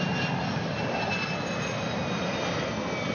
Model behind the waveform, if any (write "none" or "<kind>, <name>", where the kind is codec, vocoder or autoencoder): none